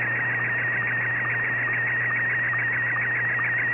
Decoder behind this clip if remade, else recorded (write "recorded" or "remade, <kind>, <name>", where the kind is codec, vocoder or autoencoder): recorded